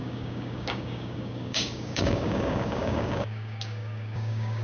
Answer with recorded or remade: remade